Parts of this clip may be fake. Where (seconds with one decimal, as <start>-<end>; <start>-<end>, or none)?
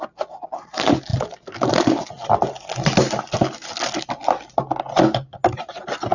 none